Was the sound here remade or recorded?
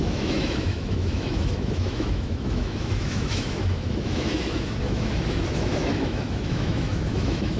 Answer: remade